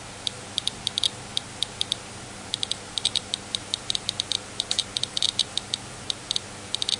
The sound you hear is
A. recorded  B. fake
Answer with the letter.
A